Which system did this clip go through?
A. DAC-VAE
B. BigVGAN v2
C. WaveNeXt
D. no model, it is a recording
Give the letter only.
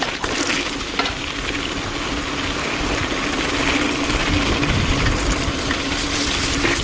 D